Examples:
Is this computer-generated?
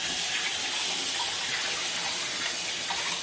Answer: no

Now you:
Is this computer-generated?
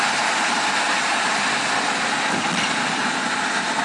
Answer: no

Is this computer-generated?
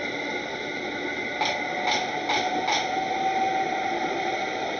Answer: no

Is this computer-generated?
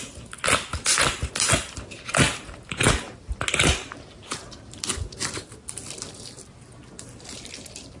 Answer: no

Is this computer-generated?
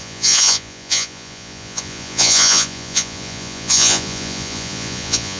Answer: yes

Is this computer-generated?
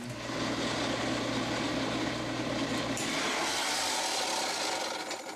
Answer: no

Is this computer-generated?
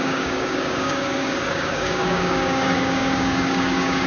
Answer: yes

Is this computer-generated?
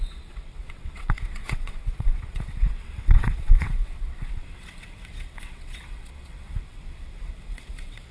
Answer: yes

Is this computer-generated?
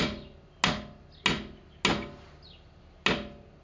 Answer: no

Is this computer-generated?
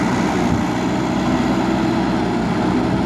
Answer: no